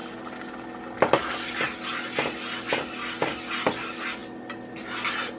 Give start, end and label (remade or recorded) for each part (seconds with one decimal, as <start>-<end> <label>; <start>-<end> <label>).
0.0-5.4 recorded